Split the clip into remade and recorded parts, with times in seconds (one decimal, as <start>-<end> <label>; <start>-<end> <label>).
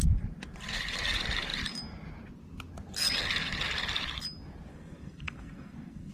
0.0-4.7 recorded; 4.7-6.1 remade